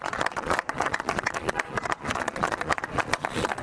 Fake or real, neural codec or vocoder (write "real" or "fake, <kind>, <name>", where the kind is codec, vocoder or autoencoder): fake, vocoder, Vocos